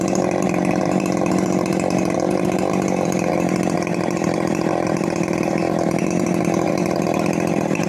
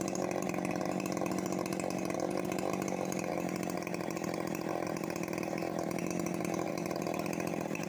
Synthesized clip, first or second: first